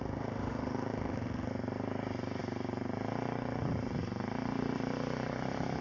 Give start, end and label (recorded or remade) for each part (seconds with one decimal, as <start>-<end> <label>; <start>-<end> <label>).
0.0-1.5 remade; 1.5-5.8 recorded